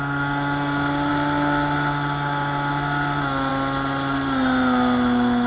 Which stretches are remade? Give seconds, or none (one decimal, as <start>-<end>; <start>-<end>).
none